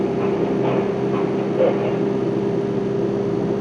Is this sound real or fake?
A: real